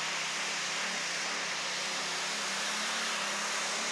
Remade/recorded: recorded